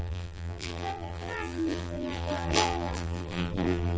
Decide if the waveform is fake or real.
fake